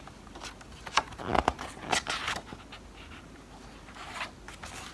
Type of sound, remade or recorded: recorded